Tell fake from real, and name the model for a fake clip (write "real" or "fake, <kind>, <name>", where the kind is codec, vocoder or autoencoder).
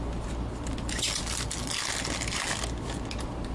real